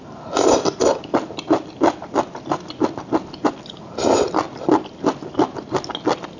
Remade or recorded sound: recorded